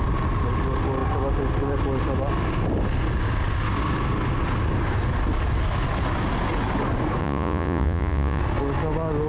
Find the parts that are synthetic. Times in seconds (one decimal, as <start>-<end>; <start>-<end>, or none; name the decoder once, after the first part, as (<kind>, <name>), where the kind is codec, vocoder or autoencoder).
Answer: 7.2-8.4 (vocoder, Vocos)